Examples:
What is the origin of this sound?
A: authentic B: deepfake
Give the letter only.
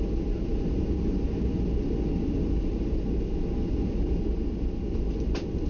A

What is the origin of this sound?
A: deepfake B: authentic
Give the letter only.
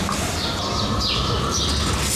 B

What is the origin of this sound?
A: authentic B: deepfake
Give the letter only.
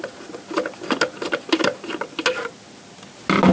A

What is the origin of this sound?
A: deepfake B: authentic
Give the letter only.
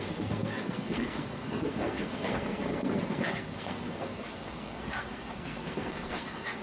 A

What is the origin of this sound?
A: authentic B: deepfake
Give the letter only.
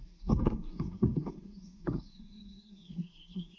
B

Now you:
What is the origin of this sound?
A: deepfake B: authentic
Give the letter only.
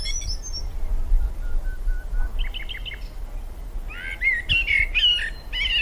B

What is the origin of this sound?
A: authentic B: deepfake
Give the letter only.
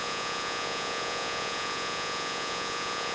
B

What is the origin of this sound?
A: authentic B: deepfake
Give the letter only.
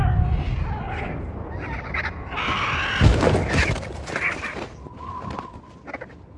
A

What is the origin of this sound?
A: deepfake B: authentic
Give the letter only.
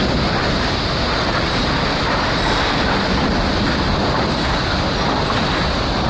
B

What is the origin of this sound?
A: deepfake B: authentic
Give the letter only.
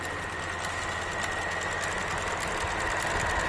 B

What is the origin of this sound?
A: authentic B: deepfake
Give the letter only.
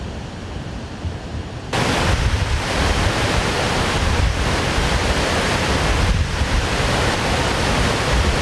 B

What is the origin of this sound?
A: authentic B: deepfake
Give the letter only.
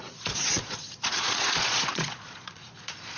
B